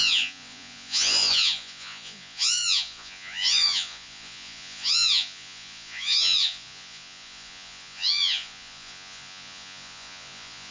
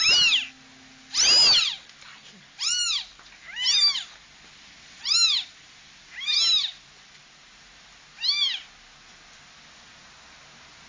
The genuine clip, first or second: second